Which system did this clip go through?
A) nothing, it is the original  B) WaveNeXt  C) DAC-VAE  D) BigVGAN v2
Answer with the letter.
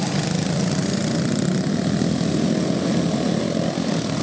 A